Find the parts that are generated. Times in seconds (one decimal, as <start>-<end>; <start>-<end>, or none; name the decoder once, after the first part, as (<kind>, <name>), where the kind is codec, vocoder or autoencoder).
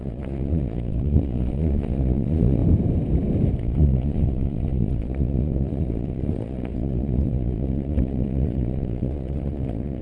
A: 0.0-2.6 (vocoder, Vocos); 3.6-10.0